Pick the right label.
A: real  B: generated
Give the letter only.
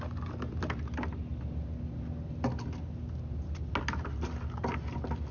A